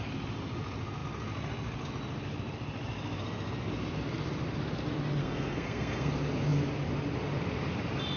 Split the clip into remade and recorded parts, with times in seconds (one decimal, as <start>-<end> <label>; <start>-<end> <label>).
0.0-5.2 recorded; 5.2-6.1 remade; 6.1-8.2 recorded